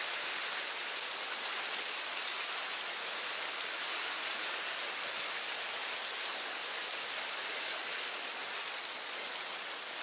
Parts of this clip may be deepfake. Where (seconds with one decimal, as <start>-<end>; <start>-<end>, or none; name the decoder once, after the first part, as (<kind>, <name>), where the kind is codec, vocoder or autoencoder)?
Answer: none